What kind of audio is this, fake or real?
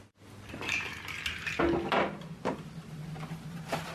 real